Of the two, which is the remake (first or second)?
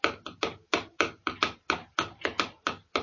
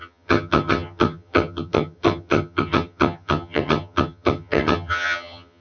second